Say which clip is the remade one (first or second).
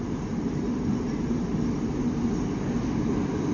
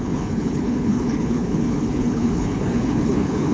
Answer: second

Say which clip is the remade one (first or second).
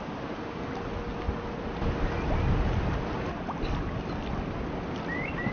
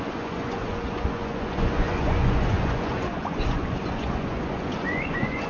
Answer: second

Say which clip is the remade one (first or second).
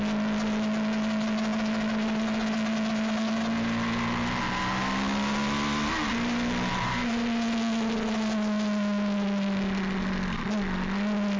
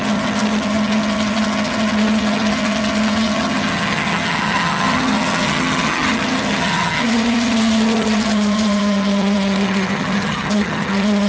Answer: second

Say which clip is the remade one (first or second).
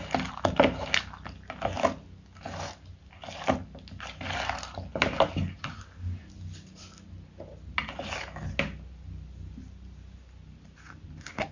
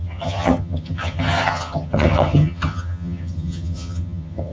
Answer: second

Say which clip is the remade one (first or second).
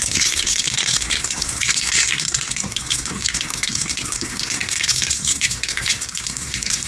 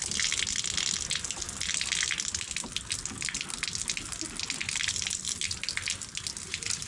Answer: first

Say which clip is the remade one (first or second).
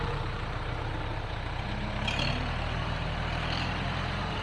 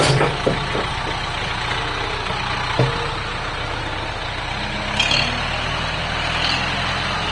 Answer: first